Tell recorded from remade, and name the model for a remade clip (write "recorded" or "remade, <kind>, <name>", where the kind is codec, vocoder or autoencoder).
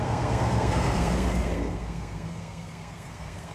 remade, codec, SNAC